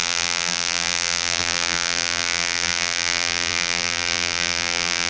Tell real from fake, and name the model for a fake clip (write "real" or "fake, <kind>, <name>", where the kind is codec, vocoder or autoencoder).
fake, vocoder, BigVGAN v2